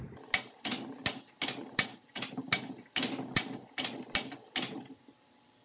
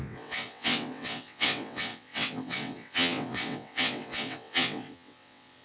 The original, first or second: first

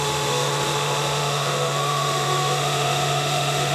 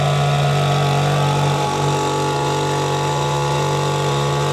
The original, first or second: second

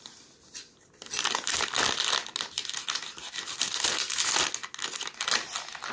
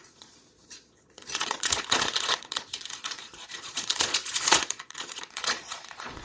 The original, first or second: first